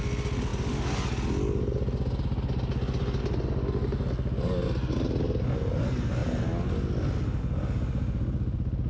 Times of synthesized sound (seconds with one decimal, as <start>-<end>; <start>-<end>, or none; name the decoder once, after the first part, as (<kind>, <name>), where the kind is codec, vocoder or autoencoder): none